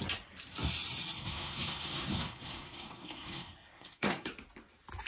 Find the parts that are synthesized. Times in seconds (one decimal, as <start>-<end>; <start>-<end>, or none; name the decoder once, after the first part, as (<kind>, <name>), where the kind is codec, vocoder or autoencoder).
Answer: 1.2-4.3 (codec, SNAC)